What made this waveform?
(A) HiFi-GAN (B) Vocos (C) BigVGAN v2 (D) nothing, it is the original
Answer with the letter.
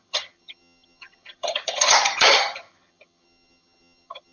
A